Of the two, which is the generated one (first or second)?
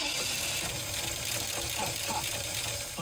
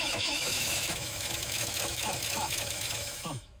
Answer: second